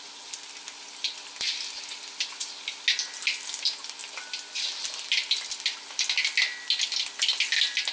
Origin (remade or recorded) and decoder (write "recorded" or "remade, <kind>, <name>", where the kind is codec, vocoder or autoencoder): recorded